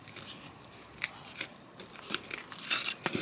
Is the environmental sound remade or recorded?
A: recorded